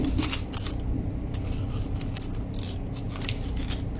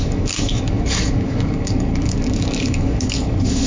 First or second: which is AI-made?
second